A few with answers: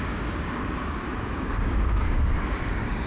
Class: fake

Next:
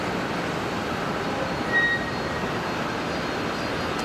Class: real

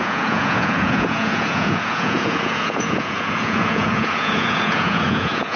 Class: fake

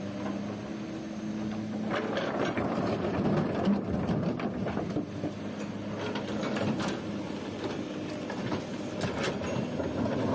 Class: real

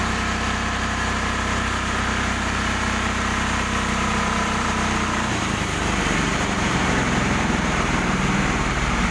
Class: fake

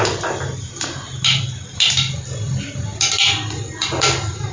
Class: real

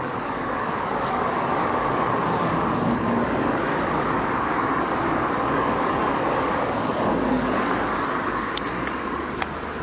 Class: fake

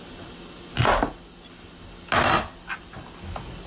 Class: real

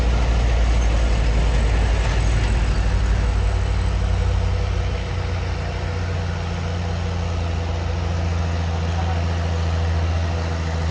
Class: real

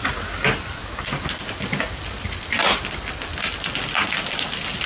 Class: real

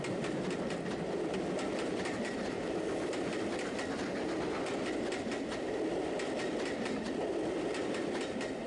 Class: real